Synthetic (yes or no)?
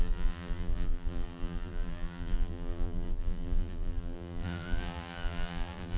yes